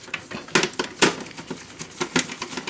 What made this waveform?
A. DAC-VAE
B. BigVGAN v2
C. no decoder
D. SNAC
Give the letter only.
C